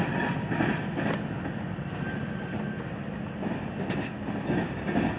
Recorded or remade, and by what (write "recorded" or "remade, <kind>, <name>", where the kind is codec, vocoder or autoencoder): recorded